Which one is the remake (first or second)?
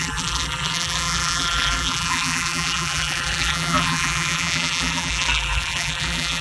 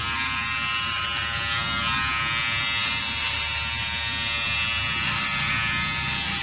first